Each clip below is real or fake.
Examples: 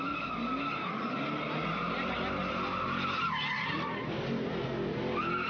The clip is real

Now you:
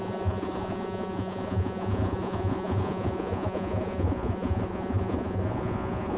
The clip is fake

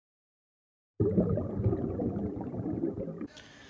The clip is real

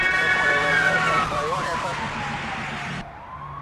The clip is real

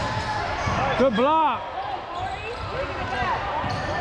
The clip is real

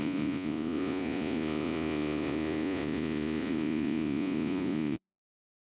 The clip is fake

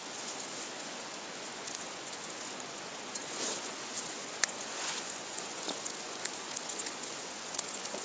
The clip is fake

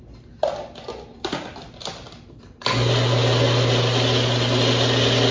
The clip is real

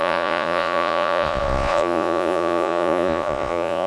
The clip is fake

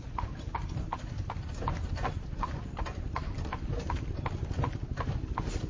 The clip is real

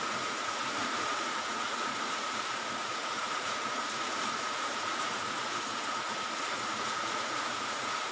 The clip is fake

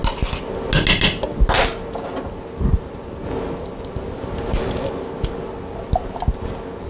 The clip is real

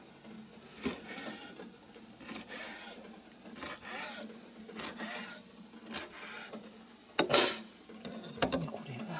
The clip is real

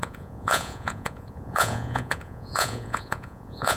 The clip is fake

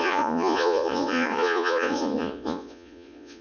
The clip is fake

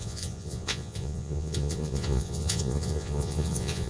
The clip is fake